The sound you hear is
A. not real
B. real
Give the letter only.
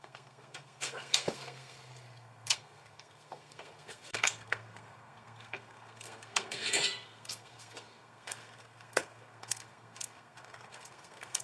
A